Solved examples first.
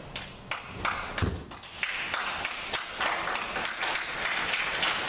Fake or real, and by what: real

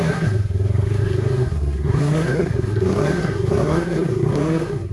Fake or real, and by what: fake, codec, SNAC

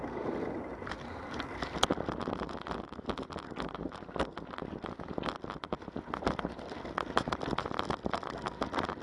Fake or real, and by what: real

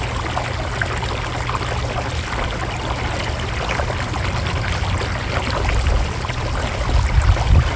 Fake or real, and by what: real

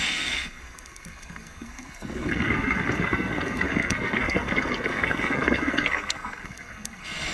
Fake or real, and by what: fake, codec, SNAC